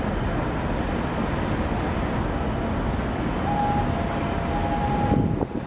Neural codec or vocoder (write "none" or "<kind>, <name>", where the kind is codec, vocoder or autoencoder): none